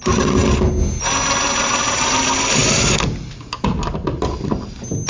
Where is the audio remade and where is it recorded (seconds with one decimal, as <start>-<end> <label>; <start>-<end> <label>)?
0.0-5.1 recorded